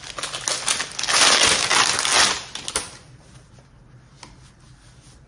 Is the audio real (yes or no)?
yes